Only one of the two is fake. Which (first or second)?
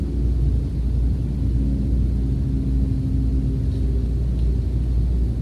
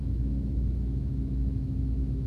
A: second